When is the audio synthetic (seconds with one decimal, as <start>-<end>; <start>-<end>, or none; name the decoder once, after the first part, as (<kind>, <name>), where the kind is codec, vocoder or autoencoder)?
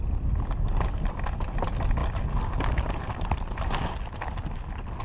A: none